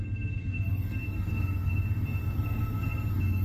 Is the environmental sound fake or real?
fake